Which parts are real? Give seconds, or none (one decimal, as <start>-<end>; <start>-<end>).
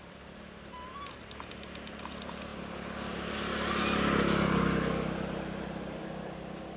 0.0-6.8